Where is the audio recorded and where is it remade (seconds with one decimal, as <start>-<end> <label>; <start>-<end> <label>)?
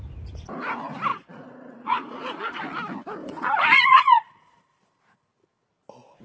0.0-1.1 recorded; 1.1-2.6 remade; 2.6-3.2 recorded; 3.2-4.6 remade; 4.6-6.2 recorded